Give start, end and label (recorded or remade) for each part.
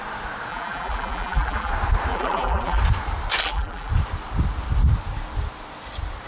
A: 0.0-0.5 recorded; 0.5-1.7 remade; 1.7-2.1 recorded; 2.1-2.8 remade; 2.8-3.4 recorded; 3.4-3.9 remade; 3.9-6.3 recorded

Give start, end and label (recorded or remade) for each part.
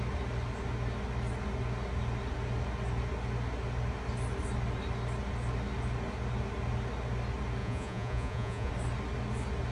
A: 0.0-7.6 recorded; 7.6-8.7 remade; 8.7-9.7 recorded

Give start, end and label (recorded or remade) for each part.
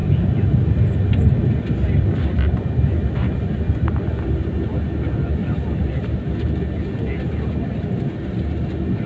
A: 0.0-9.1 recorded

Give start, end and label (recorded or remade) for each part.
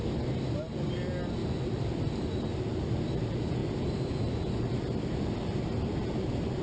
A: 0.0-1.4 recorded; 1.4-2.4 remade; 2.4-3.6 recorded; 3.6-6.1 remade; 6.1-6.6 recorded